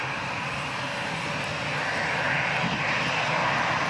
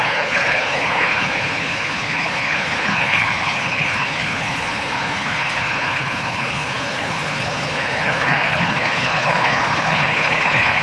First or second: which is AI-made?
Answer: second